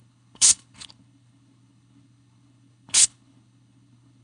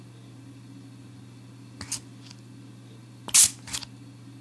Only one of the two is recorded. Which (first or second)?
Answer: second